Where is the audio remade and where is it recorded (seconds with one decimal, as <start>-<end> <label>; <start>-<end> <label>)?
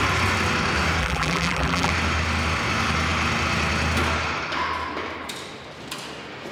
0.0-1.0 recorded; 1.0-1.9 remade; 1.9-6.5 recorded